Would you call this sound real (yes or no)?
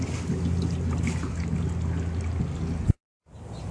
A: yes